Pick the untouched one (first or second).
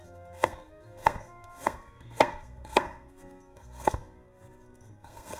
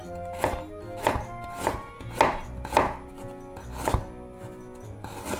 second